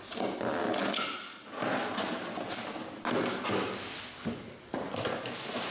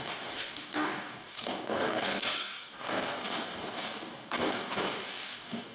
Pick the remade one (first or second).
second